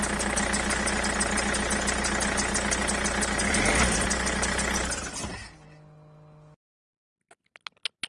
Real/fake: real